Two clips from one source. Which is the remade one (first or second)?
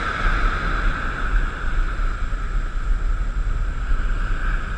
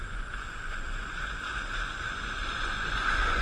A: second